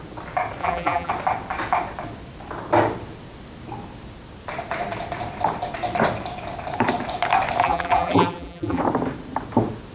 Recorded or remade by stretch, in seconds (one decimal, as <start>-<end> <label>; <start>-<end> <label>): 0.0-0.6 recorded; 0.6-1.1 remade; 1.1-7.6 recorded; 7.6-8.8 remade; 8.8-9.9 recorded